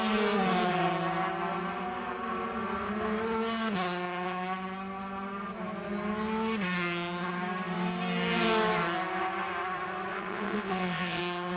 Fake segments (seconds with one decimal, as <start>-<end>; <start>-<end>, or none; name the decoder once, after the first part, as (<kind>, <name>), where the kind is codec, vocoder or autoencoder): 10.1-11.2 (vocoder, Vocos)